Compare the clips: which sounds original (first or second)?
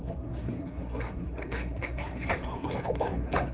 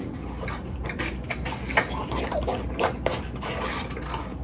second